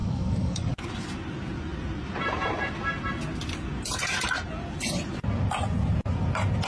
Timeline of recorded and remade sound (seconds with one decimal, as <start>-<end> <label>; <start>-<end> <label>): 0.0-0.9 remade; 0.9-6.7 recorded